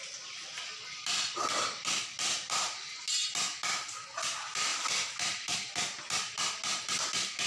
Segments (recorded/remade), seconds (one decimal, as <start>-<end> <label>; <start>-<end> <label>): 0.0-7.5 recorded